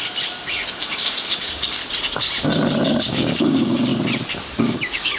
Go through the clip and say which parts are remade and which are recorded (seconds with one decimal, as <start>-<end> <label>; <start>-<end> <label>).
0.0-0.7 recorded; 0.7-1.8 remade; 1.8-3.1 recorded; 3.1-3.9 remade; 3.9-4.6 recorded; 4.6-5.2 remade